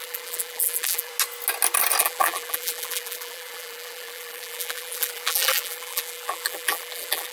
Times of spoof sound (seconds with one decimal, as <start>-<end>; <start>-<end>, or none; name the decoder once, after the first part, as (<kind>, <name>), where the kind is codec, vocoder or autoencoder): 0.0-1.1 (vocoder, BigVGAN v2); 2.0-7.3